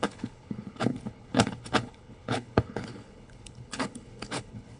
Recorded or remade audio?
remade